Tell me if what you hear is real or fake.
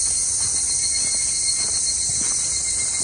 real